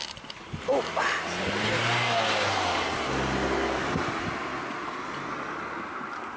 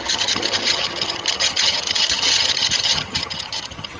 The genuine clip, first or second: first